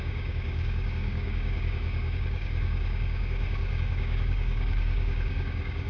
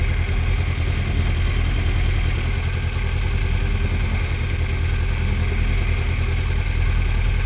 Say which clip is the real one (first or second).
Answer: second